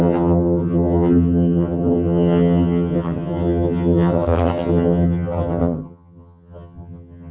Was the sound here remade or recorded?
remade